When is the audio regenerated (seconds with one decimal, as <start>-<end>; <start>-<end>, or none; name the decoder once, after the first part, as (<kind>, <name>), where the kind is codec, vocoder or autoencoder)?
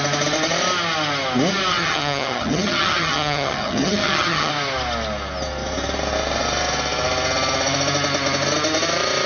1.7-4.5 (vocoder, HiFi-GAN)